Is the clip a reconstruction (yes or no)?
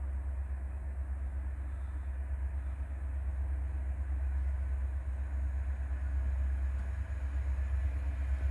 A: no